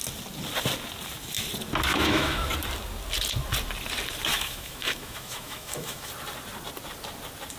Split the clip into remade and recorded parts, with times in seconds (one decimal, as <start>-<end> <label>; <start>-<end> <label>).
0.0-1.9 recorded; 1.9-2.5 remade; 2.5-4.3 recorded; 4.3-6.1 remade; 6.1-7.6 recorded

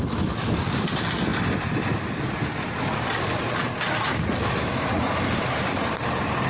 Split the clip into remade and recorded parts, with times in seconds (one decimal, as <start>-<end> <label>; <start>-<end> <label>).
0.0-6.5 recorded

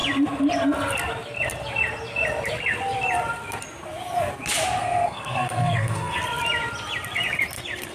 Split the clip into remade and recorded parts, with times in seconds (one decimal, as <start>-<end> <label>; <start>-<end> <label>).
0.0-4.8 recorded; 4.8-6.2 remade; 6.2-7.9 recorded

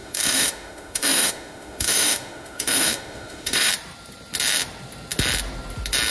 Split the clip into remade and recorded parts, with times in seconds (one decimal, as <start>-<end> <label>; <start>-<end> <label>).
0.0-3.7 remade; 3.7-6.1 recorded